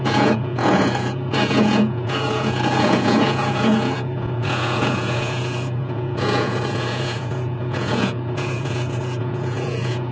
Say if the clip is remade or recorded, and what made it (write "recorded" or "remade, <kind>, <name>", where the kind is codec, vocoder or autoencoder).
remade, vocoder, Vocos